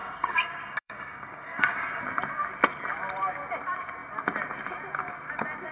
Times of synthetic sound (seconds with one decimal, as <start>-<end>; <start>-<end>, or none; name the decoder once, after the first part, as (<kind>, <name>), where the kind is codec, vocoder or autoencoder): 0.0-2.0 (codec, DAC)